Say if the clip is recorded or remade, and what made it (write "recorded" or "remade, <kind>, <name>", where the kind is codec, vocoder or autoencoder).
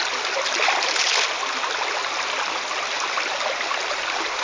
recorded